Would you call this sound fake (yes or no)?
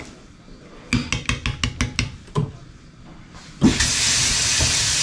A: no